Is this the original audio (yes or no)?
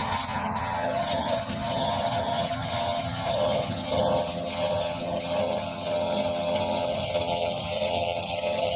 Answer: no